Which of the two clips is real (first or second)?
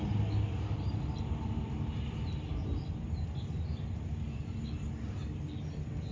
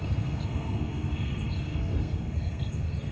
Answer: first